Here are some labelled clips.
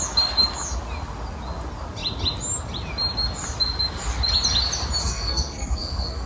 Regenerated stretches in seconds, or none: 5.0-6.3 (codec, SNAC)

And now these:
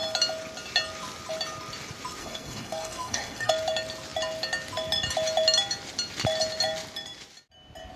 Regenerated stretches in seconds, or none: 2.2-3.5 (codec, SNAC)

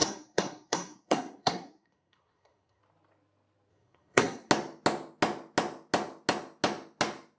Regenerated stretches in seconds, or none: 0.0-2.8 (codec, SNAC); 3.7-4.5

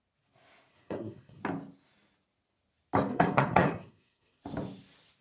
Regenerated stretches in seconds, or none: 0.7-1.4 (codec, SNAC); 3.1-4.4

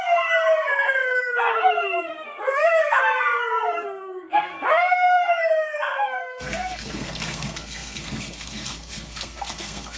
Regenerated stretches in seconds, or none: 0.0-10.0 (codec, SNAC)

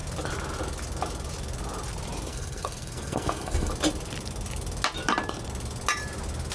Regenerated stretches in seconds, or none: 2.3-3.7 (codec, SNAC)